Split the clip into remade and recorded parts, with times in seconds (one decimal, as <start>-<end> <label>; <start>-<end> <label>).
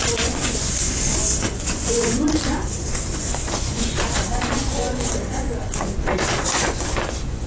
0.0-7.5 remade